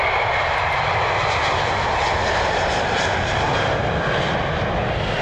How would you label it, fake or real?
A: real